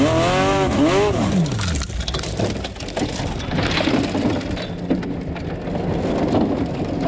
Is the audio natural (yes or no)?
yes